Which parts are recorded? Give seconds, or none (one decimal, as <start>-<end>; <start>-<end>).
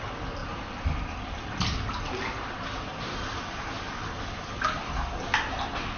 0.0-6.0